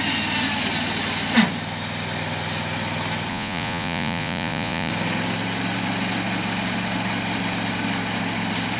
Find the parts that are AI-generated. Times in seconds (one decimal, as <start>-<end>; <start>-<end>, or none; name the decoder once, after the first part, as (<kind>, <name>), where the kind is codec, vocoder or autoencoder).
3.3-4.9 (vocoder, Vocos)